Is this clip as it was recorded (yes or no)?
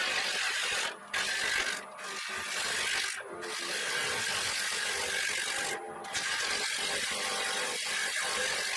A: yes